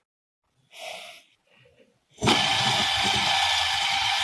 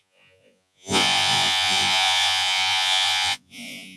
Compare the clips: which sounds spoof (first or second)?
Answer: second